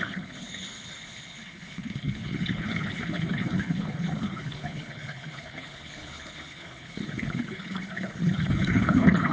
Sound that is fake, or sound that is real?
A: fake